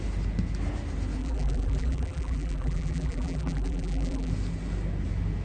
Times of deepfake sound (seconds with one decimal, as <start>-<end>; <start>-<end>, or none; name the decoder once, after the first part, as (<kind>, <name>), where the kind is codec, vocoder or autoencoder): 1.2-4.3 (vocoder, BigVGAN v2)